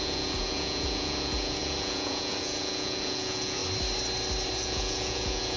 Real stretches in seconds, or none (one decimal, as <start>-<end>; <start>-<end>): 3.6-4.6